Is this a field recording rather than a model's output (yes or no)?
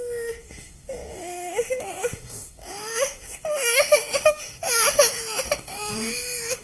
no